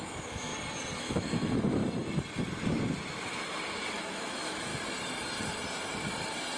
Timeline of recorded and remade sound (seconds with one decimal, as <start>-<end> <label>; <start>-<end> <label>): 0.0-0.5 remade; 0.5-1.0 recorded; 1.0-1.8 remade; 1.8-3.9 recorded; 3.9-4.7 remade; 4.7-6.6 recorded